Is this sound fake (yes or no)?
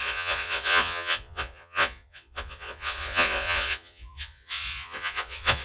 yes